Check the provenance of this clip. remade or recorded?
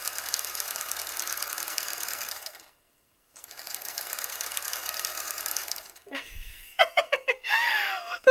remade